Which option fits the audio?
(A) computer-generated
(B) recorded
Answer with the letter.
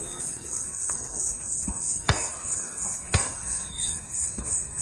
A